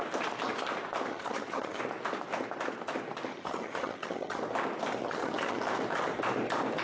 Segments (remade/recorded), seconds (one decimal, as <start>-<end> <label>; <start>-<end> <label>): 0.0-1.1 recorded; 1.1-1.8 remade; 1.8-3.3 recorded; 3.3-4.4 remade; 4.4-5.0 recorded; 5.0-5.6 remade; 5.6-6.8 recorded